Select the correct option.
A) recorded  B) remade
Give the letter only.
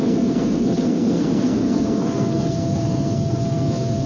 B